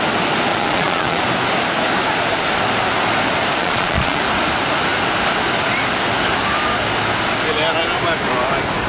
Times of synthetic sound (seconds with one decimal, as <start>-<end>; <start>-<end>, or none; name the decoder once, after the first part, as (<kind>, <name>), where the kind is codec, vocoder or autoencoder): 0.5-1.2 (vocoder, Vocos); 3.6-4.2